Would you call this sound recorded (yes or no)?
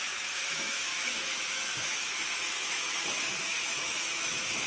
no